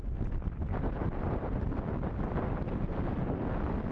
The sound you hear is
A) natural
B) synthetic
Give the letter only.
A